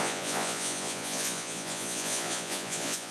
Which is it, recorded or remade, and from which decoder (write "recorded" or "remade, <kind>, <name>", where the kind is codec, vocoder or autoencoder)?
remade, vocoder, Vocos